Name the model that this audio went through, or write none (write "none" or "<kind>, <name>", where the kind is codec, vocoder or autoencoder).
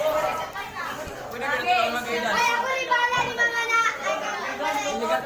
none